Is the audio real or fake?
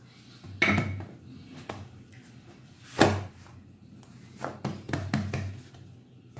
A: real